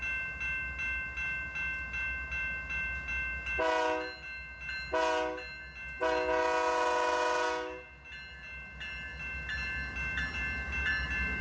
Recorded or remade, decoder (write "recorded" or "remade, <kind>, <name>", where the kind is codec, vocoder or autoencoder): recorded